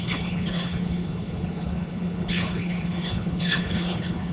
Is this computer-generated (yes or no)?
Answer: yes